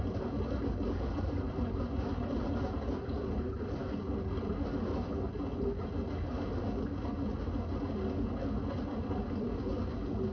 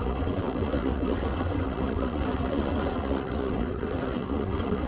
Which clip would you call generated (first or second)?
second